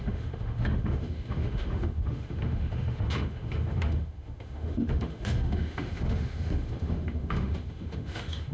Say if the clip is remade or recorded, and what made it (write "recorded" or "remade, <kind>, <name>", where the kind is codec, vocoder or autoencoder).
remade, autoencoder, DAC-VAE